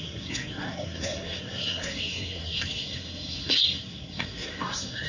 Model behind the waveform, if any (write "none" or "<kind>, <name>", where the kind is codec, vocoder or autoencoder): codec, SNAC